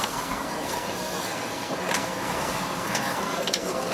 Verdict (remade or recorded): remade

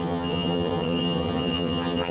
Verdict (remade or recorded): remade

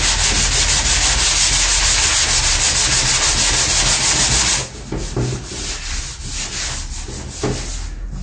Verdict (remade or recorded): recorded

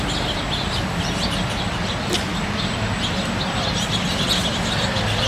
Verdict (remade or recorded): recorded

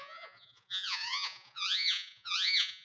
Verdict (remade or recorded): remade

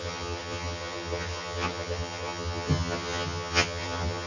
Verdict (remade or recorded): remade